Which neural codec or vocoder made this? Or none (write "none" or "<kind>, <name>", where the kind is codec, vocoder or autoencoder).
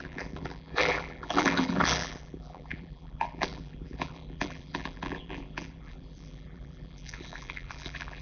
vocoder, BigVGAN v2